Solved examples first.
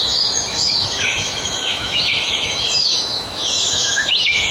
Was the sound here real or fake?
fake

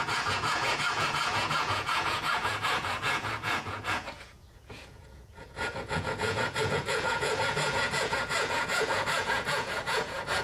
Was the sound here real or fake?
fake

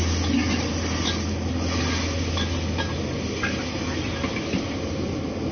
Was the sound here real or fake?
real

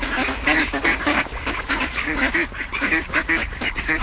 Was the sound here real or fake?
fake